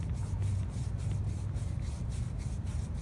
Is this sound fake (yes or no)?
no